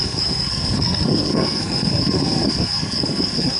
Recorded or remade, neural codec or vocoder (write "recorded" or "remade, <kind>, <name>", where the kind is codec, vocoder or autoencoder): remade, codec, SNAC